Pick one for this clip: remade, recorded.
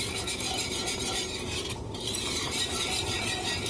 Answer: remade